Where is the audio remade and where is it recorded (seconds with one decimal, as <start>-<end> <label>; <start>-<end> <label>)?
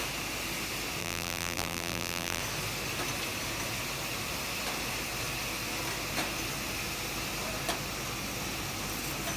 0.0-1.0 recorded; 1.0-2.4 remade; 2.4-9.4 recorded